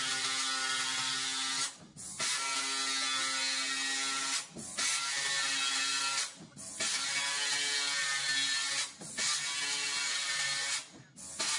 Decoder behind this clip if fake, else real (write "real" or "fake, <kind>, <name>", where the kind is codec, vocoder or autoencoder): real